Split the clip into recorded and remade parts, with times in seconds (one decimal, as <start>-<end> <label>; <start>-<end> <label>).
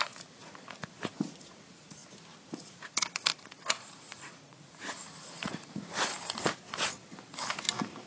0.0-2.0 remade; 2.0-2.7 recorded; 2.7-6.1 remade; 6.1-8.1 recorded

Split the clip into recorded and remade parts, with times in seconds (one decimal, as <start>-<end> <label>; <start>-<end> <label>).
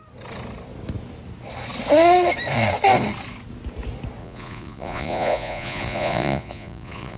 0.0-4.2 recorded; 4.2-7.2 remade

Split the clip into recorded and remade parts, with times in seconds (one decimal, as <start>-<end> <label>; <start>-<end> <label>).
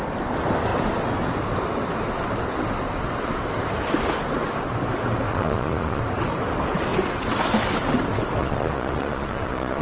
0.0-5.3 recorded; 5.3-6.0 remade; 6.0-8.4 recorded; 8.4-9.8 remade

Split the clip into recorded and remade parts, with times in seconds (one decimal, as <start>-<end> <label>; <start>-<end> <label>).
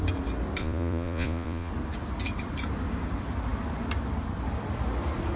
0.0-0.6 recorded; 0.6-1.7 remade; 1.7-5.4 recorded